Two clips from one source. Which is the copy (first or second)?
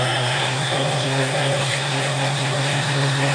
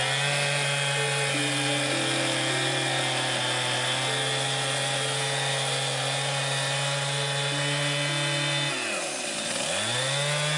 first